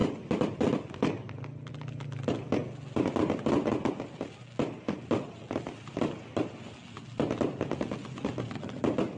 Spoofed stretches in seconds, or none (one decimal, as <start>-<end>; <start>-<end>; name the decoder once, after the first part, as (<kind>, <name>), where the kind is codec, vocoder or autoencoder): none